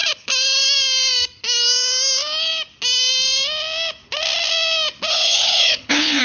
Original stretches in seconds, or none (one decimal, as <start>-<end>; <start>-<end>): 0.0-5.1